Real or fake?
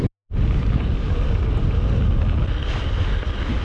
real